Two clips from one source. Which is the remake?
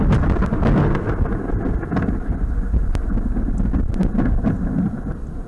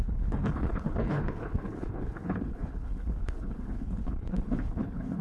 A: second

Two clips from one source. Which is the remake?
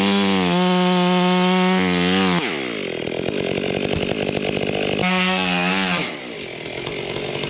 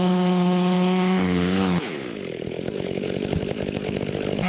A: second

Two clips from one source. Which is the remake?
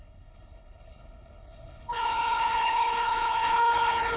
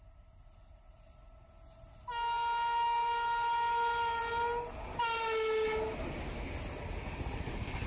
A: first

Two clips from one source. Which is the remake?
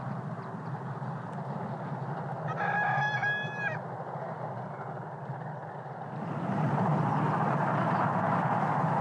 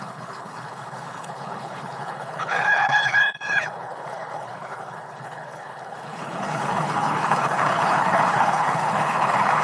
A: second